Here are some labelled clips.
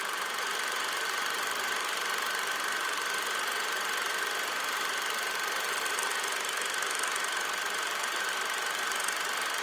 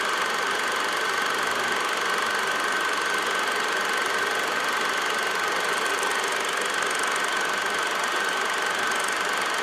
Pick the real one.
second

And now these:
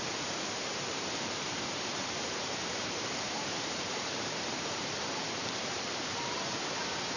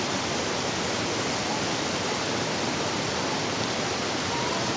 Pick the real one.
second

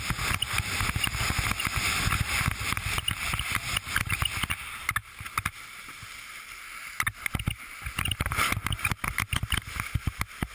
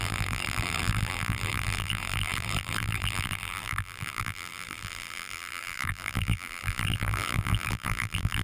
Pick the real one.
first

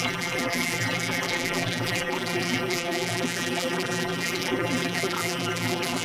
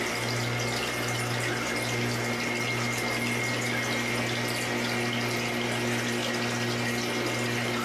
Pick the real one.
second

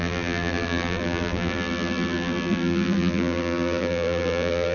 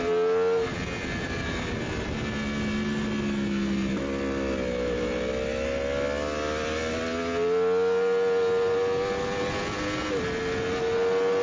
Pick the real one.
second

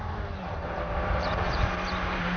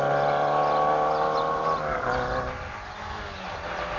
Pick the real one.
second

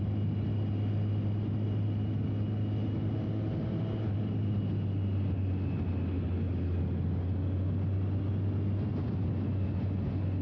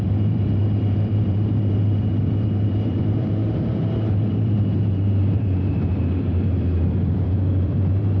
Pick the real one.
first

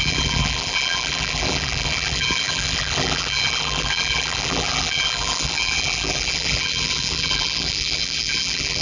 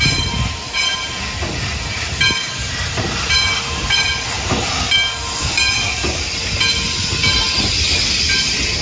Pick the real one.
second